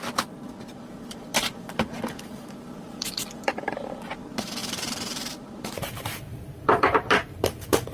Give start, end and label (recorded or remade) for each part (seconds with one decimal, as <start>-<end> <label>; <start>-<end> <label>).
0.0-7.9 remade